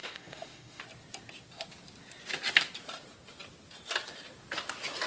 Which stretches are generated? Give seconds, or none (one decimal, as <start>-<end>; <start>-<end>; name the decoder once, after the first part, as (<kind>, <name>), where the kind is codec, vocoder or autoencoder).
0.0-0.8 (autoencoder, DAC-VAE)